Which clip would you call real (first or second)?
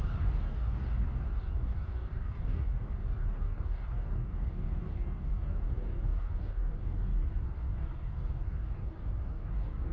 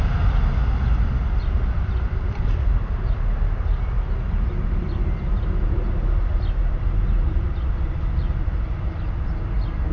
second